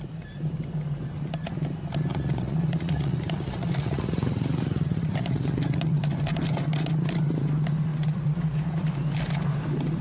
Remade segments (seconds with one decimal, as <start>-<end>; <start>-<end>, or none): 2.1-6.0; 7.9-8.8